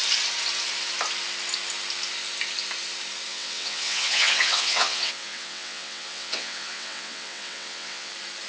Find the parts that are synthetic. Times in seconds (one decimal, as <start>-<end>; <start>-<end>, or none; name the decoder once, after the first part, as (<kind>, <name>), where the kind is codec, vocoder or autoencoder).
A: 3.3-8.1 (vocoder, WaveNeXt)